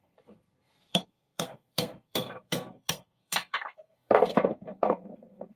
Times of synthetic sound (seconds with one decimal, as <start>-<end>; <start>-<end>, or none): 0.0-5.6